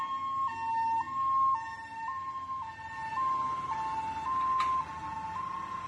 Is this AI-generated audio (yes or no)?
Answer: no